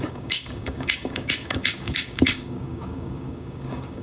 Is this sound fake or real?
fake